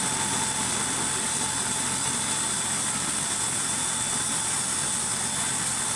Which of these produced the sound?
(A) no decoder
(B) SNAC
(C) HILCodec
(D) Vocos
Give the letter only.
A